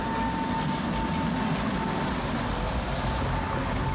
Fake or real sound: real